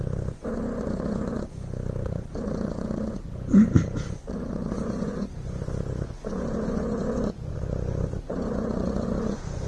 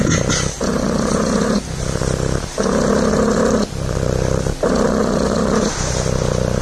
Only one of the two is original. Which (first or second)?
second